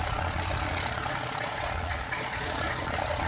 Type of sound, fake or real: fake